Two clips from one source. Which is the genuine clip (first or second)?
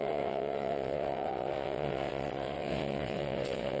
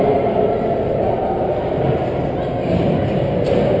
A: second